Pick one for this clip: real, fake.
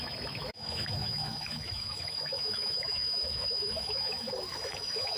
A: fake